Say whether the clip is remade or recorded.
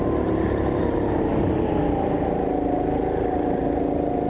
recorded